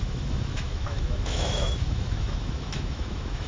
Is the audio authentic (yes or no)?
no